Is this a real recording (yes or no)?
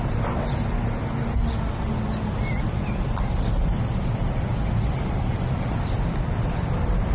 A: yes